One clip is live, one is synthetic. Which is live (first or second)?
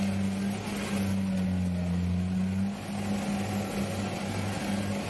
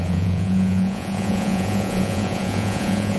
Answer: first